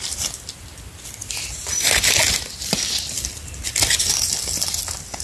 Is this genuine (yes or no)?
yes